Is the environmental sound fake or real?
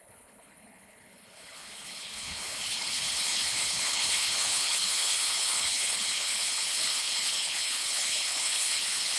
fake